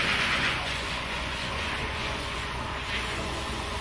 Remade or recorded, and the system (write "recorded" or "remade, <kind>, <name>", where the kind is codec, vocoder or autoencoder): remade, vocoder, Vocos